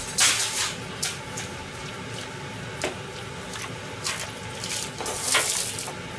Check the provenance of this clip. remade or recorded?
recorded